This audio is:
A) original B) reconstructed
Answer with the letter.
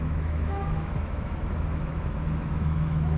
B